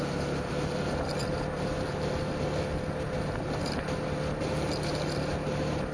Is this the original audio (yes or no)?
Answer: yes